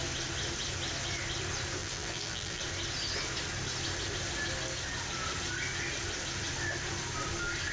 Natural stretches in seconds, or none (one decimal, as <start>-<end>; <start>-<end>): 0.0-1.8; 2.6-7.7

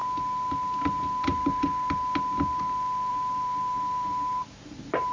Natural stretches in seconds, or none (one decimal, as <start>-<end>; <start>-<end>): 0.0-3.1

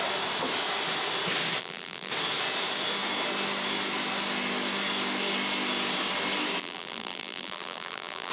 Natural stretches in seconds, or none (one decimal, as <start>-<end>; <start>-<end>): 0.0-1.6; 2.1-6.6